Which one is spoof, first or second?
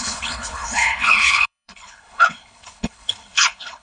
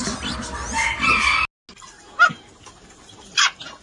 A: first